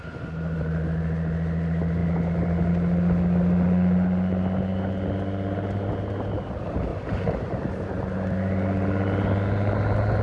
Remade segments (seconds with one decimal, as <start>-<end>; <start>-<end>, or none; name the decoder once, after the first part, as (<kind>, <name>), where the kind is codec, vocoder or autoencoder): 6.9-7.6 (vocoder, BigVGAN v2)